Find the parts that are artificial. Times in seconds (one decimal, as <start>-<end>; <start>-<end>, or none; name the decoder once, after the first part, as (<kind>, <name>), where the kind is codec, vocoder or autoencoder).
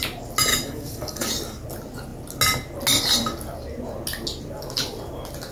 0.5-1.3 (codec, DAC)